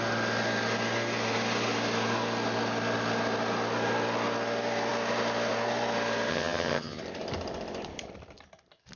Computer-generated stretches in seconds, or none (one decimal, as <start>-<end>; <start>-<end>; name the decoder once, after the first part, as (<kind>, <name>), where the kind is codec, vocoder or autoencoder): 6.3-7.0 (vocoder, HiFi-GAN)